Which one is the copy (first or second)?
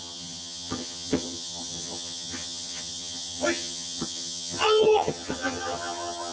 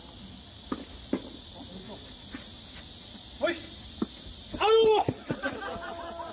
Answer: first